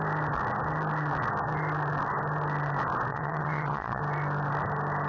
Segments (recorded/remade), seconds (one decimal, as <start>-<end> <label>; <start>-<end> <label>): 0.0-3.1 recorded; 3.1-4.0 remade; 4.0-5.1 recorded